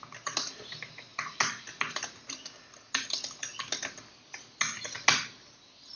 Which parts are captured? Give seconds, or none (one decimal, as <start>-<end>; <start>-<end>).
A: 0.0-6.0